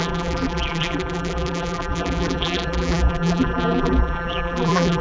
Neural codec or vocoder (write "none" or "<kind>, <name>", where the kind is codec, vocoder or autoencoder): vocoder, BigVGAN v2